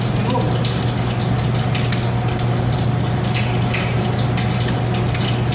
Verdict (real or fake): real